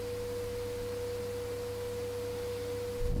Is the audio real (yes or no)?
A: yes